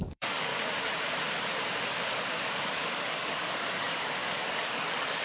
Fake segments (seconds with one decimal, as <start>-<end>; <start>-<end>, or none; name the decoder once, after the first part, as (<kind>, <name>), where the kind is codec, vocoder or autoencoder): 0.0-0.5 (codec, DAC); 2.3-5.2